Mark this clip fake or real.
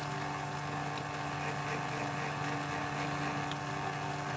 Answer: real